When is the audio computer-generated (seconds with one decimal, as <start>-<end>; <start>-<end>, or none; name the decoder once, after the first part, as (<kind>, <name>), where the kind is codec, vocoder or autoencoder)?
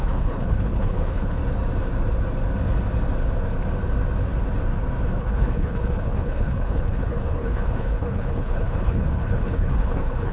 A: 0.0-1.4 (codec, HILCodec); 5.2-10.3